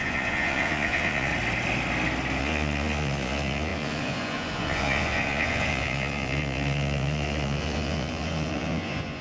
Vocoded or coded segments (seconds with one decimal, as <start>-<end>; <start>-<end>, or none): 0.0-1.3; 2.4-9.2

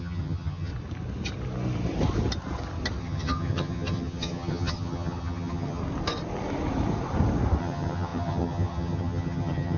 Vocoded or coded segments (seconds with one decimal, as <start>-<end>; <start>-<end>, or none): 0.0-0.7; 3.0-5.8; 7.6-9.8

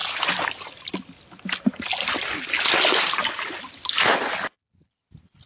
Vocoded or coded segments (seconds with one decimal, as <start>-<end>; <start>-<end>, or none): none

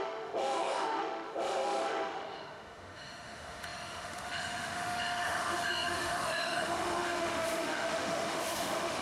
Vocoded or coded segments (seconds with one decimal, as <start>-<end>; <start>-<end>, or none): 0.0-9.0

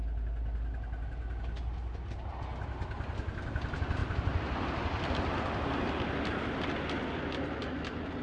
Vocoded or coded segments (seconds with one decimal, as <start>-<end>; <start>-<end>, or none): none

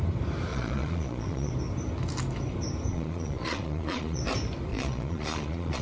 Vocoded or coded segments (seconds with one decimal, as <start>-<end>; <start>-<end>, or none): 0.5-1.5; 2.9-4.2; 4.7-5.8

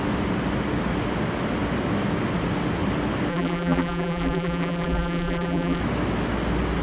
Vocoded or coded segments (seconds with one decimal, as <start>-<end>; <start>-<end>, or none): 3.3-5.8